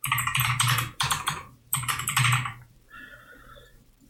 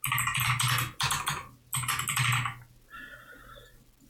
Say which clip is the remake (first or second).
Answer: first